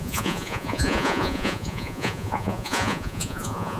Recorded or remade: remade